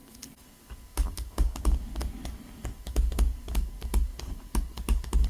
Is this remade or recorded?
remade